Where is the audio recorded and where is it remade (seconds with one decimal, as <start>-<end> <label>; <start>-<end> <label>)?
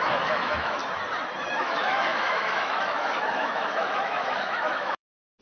0.0-0.8 remade; 0.8-1.5 recorded; 1.5-5.4 remade